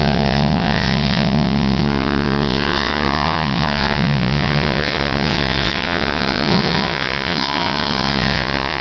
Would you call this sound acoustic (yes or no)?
no